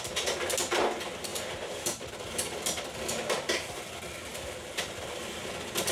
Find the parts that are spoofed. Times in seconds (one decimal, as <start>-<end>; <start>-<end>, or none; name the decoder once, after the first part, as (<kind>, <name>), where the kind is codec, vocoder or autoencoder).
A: 1.3-2.0 (vocoder, BigVGAN v2)